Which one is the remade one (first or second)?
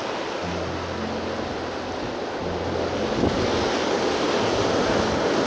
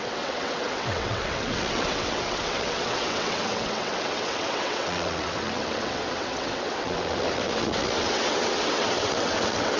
second